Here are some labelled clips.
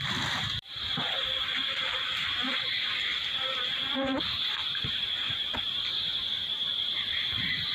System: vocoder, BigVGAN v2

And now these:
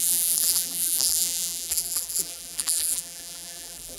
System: vocoder, BigVGAN v2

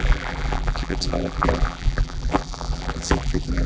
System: vocoder, BigVGAN v2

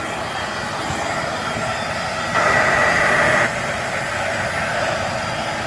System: none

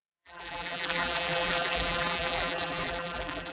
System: vocoder, BigVGAN v2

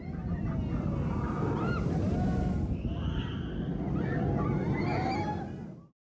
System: none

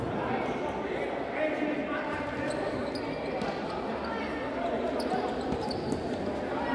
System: none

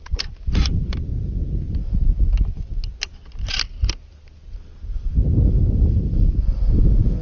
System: none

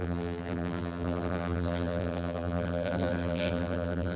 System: vocoder, BigVGAN v2